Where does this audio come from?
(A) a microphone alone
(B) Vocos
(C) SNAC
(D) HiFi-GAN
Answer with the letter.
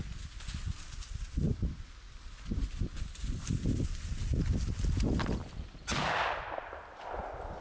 A